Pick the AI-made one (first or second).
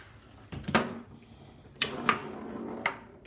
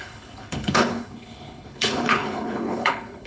second